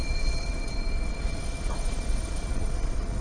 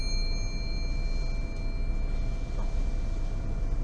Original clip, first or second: second